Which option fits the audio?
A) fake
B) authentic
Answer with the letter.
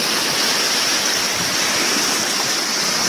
B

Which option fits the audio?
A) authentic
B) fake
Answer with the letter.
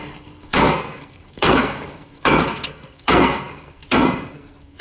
B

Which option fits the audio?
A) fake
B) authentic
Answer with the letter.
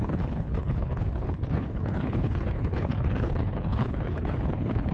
A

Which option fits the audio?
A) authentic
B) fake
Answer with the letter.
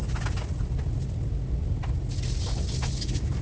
A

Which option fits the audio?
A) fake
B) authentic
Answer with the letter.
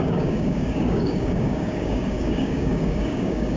A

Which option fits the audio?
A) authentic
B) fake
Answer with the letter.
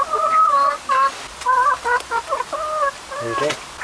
A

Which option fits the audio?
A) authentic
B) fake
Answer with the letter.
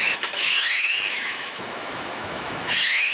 B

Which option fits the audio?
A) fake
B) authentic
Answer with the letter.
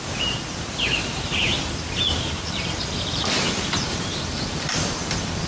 A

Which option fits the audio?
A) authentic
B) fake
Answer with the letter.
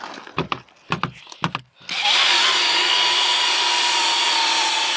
A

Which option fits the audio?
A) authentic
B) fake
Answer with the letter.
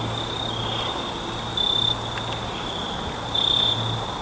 A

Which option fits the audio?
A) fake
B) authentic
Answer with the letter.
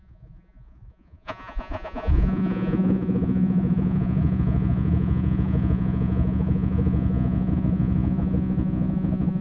A